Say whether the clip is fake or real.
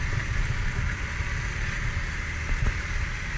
real